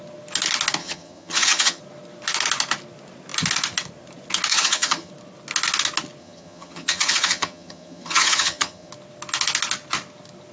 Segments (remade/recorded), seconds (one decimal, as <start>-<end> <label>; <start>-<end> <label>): 0.0-0.8 recorded; 0.8-1.8 remade; 1.8-4.5 recorded; 4.5-5.1 remade; 5.1-6.2 recorded; 6.2-8.9 remade; 8.9-10.5 recorded